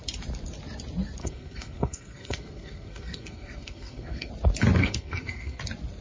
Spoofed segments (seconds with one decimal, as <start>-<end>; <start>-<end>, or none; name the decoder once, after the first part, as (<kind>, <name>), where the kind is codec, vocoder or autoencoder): 1.2-4.3 (codec, SNAC); 4.8-5.6